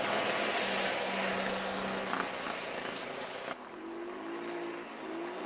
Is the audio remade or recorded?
recorded